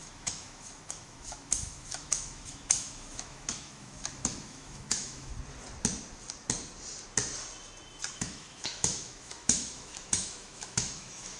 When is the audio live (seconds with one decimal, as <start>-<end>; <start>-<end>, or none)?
5.3-8.1